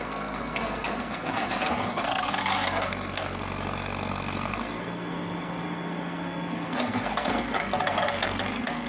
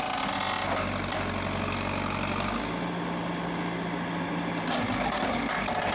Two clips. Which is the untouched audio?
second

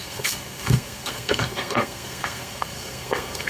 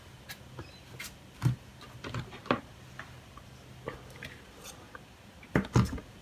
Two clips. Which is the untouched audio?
second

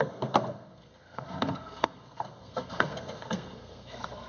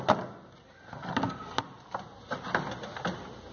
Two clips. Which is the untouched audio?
second